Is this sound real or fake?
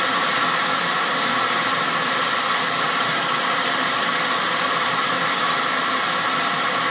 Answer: real